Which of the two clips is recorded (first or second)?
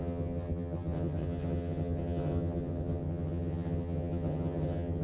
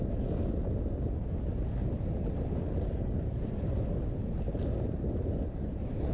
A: second